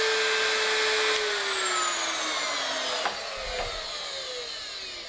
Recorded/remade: recorded